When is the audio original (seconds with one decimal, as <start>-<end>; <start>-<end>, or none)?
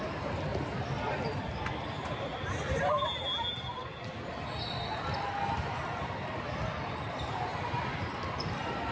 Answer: 2.3-6.5